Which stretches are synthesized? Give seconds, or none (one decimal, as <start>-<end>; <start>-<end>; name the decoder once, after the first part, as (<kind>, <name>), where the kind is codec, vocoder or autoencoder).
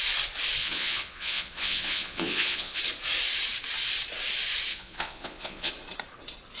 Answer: 0.6-2.8 (vocoder, Vocos); 4.7-5.7